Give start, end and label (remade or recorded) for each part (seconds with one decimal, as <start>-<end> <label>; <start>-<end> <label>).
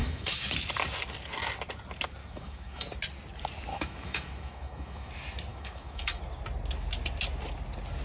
0.0-0.5 remade; 0.5-2.2 recorded; 2.2-2.9 remade; 2.9-3.7 recorded; 3.7-5.1 remade; 5.1-5.5 recorded; 5.5-6.2 remade; 6.2-8.0 recorded